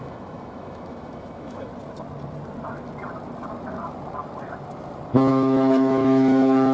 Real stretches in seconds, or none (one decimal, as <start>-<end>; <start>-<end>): 1.7-5.3